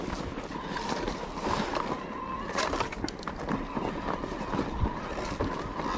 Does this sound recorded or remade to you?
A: recorded